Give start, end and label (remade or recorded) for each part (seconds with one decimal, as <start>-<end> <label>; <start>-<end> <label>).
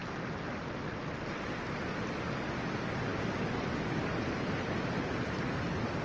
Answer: 0.0-6.0 recorded